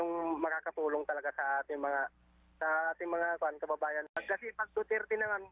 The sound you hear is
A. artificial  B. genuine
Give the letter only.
B